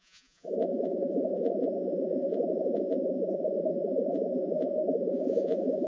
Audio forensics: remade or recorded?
remade